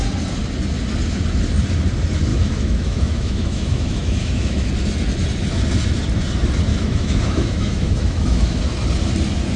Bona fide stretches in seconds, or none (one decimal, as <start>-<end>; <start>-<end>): 0.0-2.3; 4.7-6.7; 8.6-9.6